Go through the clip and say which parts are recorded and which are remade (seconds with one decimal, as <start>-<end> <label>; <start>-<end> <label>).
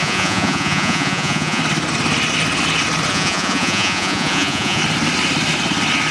0.0-1.6 remade; 1.6-3.1 recorded; 3.1-4.8 remade; 4.8-6.1 recorded